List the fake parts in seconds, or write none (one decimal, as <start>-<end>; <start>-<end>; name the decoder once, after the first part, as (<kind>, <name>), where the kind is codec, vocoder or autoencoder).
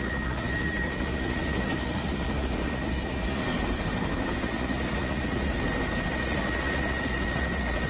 0.0-3.4 (vocoder, Vocos); 4.4-5.5; 6.1-7.9